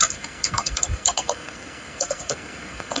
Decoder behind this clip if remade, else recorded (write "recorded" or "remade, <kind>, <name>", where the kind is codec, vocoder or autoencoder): remade, codec, SNAC